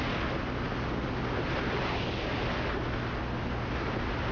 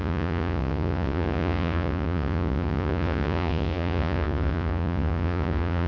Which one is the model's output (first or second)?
second